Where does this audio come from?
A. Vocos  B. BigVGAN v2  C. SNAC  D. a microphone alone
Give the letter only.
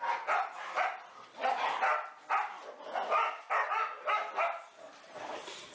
D